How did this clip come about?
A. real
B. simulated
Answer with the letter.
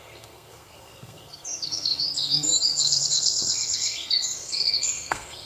B